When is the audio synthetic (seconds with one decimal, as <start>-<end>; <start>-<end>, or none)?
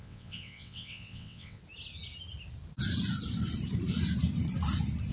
0.0-1.6